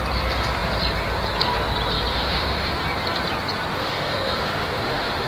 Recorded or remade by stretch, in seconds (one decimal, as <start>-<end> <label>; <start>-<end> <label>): 0.0-2.1 recorded; 2.1-2.7 remade; 2.7-3.7 recorded; 3.7-5.3 remade